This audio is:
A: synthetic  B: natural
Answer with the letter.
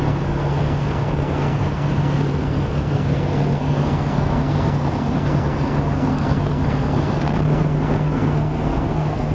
A